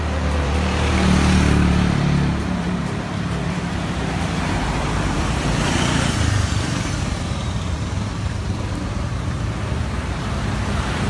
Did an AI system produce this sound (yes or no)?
yes